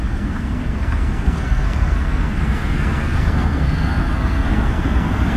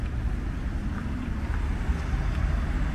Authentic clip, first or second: second